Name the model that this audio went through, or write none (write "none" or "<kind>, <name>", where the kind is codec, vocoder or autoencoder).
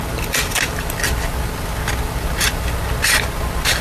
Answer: none